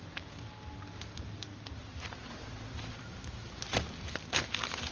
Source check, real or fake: real